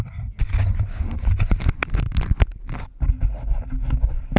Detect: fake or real real